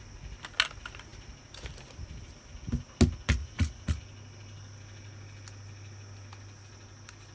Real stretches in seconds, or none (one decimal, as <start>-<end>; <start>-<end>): 0.0-3.4; 4.0-7.3